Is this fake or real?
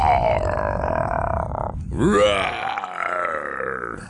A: real